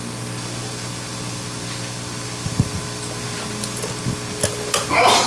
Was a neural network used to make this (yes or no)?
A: no